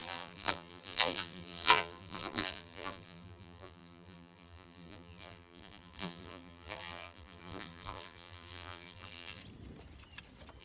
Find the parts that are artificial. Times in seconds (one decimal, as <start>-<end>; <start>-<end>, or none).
0.0-9.4